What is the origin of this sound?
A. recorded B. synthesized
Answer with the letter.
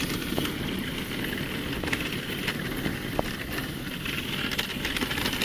A